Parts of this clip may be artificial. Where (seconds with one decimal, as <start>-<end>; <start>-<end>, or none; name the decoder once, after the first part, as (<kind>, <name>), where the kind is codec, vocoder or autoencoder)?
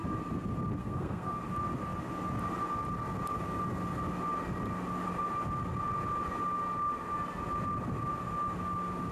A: 0.8-1.4 (codec, SNAC)